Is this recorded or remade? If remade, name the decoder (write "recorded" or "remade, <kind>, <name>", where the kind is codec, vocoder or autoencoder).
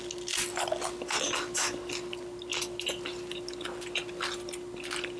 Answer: recorded